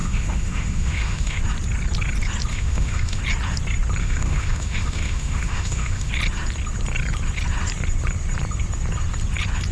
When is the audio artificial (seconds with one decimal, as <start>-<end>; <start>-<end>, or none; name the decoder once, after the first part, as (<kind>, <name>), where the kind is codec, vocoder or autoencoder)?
0.0-1.4 (autoencoder, DAC-VAE); 2.5-3.2; 4.0-6.1